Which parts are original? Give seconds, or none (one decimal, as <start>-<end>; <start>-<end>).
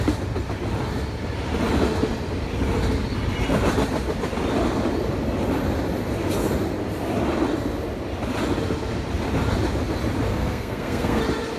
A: 0.0-10.3; 11.2-11.6